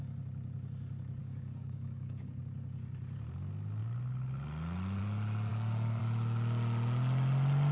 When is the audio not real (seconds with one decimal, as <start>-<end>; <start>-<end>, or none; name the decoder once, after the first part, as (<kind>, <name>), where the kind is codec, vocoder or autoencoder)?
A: 1.2-2.4 (codec, DAC); 5.5-6.0